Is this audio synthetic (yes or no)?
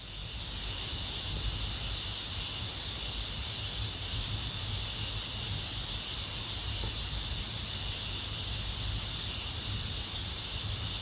no